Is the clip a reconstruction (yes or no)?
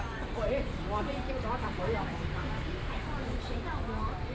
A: no